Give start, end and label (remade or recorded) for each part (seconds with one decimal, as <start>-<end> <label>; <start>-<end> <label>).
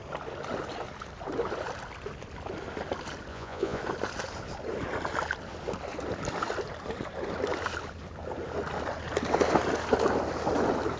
0.0-3.3 recorded; 3.3-3.8 remade; 3.8-11.0 recorded